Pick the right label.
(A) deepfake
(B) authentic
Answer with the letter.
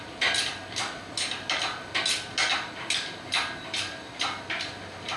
B